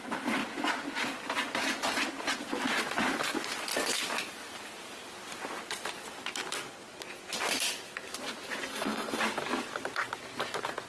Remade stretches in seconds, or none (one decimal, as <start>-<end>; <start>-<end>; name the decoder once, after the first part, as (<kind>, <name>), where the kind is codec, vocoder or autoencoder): 8.7-9.2 (codec, SNAC)